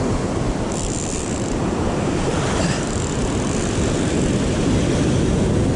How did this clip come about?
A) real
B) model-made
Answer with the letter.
A